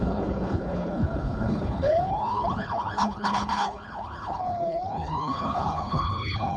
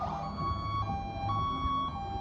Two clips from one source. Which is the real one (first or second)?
second